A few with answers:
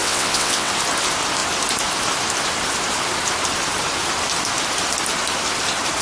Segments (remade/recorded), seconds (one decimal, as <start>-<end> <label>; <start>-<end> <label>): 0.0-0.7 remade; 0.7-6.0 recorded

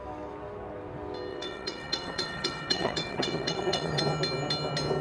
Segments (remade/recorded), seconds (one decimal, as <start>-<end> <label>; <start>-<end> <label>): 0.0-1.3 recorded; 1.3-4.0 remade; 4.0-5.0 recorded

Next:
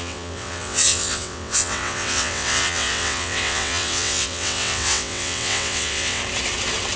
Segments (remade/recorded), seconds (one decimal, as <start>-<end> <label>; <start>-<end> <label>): 0.0-6.2 remade; 6.2-7.0 recorded

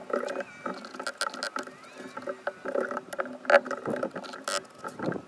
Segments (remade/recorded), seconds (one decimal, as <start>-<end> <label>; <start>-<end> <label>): 0.0-5.3 recorded

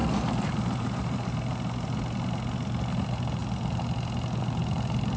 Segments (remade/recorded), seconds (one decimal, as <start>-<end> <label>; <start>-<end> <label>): 0.0-5.2 recorded